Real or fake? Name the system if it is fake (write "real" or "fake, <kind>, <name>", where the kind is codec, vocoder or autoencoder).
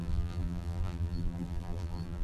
fake, vocoder, BigVGAN v2